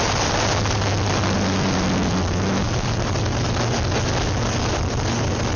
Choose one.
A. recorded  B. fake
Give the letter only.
A